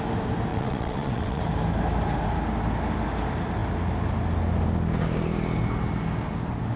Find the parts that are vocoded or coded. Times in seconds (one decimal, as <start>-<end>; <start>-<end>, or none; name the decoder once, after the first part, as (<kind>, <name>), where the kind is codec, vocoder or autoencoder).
0.5-1.4 (vocoder, WaveNeXt)